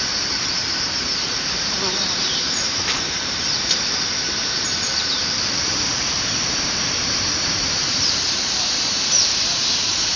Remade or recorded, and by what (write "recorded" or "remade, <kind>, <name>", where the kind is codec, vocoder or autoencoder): remade, vocoder, BigVGAN v2